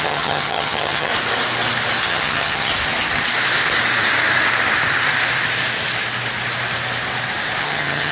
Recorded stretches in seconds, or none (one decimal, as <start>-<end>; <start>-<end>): 1.1-2.0; 2.7-7.6